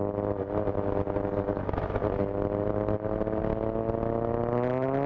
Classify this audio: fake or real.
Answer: real